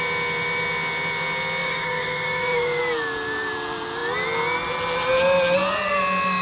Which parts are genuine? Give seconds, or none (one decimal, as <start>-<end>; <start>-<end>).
0.0-1.6; 2.8-6.4